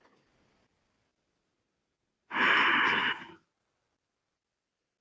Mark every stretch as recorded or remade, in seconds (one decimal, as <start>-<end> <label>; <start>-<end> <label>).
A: 0.0-5.0 recorded